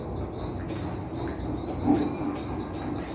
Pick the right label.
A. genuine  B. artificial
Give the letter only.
A